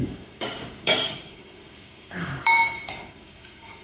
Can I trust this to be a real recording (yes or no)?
no